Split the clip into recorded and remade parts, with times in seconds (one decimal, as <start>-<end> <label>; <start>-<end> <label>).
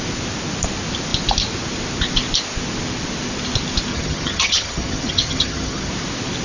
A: 0.0-3.9 recorded; 3.9-5.9 remade; 5.9-6.4 recorded